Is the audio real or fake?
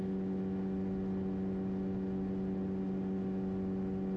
real